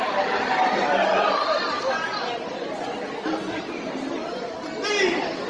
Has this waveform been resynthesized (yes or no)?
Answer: no